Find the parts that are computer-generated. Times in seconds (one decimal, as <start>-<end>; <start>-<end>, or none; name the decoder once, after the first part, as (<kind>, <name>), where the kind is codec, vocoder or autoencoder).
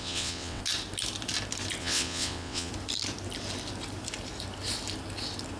0.0-0.6 (vocoder, WaveNeXt); 1.8-2.7